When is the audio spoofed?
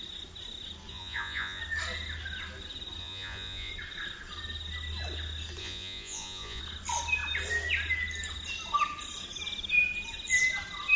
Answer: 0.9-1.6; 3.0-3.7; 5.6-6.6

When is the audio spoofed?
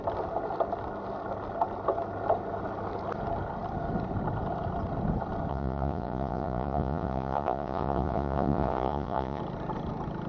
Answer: 5.5-9.4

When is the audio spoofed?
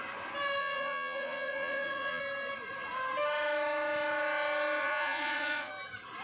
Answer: 0.6-2.2; 4.8-5.7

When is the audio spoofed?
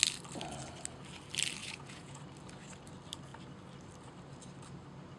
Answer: 1.6-2.2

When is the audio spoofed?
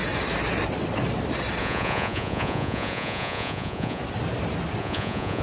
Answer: 1.6-4.0; 4.8-5.4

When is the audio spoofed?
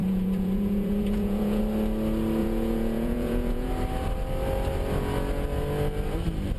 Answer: 0.0-1.6; 2.4-3.7